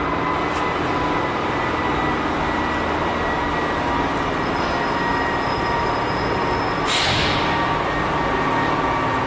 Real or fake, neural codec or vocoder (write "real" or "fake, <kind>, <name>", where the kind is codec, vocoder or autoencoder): real